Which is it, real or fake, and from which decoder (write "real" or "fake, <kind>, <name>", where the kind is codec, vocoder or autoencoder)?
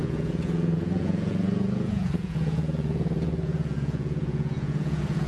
fake, vocoder, Vocos